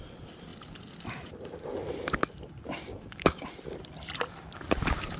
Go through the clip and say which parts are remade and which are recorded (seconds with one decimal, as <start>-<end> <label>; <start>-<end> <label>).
0.0-2.9 recorded; 2.9-3.5 remade; 3.5-5.2 recorded